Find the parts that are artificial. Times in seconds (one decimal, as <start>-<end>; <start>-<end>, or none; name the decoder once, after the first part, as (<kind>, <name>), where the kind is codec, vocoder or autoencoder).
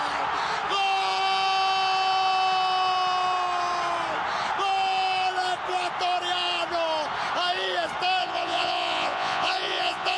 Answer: 8.2-10.2 (vocoder, Vocos)